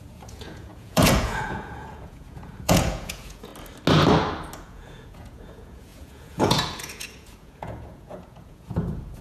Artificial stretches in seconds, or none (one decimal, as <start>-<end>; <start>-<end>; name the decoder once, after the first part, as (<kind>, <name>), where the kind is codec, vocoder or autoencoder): 0.0-3.5 (vocoder, Vocos); 4.6-9.2